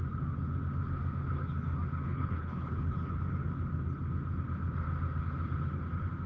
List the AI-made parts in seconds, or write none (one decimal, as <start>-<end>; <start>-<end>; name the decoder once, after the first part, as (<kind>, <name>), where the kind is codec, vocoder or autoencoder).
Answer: 2.0-3.2 (codec, HILCodec)

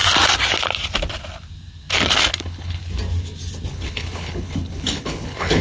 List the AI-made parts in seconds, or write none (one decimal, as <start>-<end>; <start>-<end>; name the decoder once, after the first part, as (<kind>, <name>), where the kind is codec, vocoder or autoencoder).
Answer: 2.4-2.8 (codec, HILCodec); 3.7-5.6

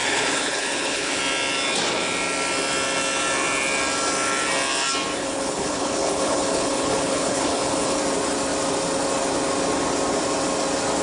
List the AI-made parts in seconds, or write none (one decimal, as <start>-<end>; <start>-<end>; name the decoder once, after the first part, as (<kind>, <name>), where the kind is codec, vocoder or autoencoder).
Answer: 0.0-1.2 (codec, HILCodec); 5.2-8.0

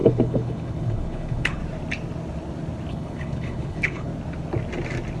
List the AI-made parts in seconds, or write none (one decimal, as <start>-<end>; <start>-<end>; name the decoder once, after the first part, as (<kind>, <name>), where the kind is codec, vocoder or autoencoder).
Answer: 0.0-1.6 (codec, HILCodec); 2.9-4.1

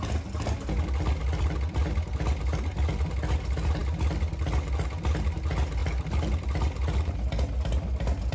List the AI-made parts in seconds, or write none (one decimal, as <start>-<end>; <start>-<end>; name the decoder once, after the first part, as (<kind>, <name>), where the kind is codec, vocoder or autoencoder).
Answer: none